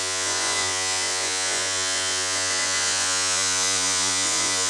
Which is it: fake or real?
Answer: fake